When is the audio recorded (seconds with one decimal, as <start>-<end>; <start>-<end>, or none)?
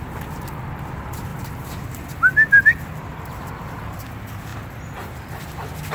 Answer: 0.0-4.5; 5.4-5.9